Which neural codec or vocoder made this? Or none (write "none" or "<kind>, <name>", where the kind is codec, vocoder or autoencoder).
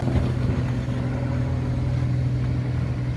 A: none